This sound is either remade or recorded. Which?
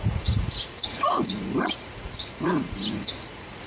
remade